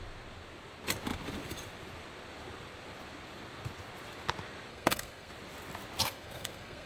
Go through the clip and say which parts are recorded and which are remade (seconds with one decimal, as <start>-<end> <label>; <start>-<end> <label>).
0.0-4.7 recorded; 4.7-5.3 remade; 5.3-6.0 recorded; 6.0-6.9 remade